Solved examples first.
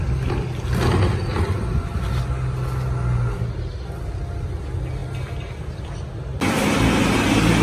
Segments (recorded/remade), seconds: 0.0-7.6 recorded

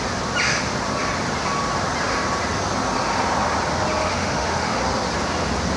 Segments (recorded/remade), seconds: 0.0-4.0 recorded; 4.0-4.8 remade; 4.8-5.8 recorded

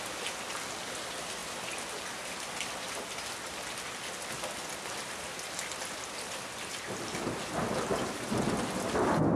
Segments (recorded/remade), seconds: 0.0-9.4 recorded

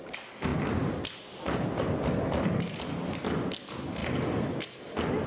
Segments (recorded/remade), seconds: 0.0-5.3 recorded